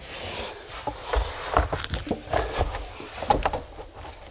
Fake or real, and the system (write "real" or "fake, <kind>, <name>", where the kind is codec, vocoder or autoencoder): real